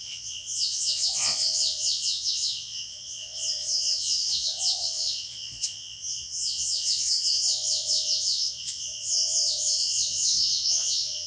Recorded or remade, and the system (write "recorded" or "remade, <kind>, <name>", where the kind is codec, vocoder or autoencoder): remade, vocoder, Vocos